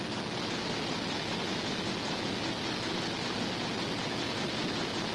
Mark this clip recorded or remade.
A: recorded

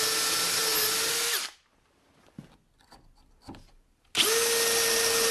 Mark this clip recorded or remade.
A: recorded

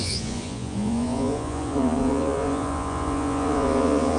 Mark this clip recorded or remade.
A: remade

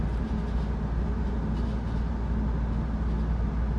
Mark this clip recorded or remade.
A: recorded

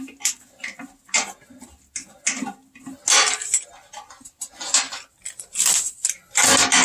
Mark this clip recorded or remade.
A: recorded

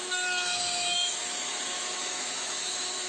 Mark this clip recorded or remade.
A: remade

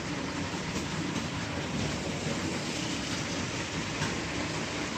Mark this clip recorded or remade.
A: remade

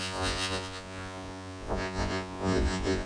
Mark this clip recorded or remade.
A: remade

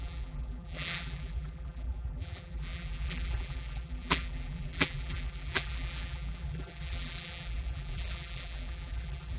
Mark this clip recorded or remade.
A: remade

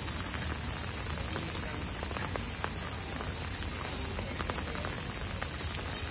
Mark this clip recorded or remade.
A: recorded